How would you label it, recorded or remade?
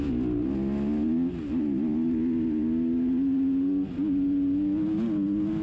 recorded